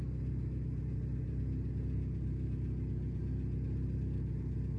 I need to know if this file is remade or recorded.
recorded